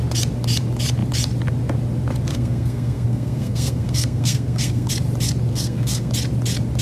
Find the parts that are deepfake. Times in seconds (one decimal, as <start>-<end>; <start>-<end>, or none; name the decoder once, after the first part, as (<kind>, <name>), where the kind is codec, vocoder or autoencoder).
2.3-4.9 (codec, SNAC); 5.5-6.1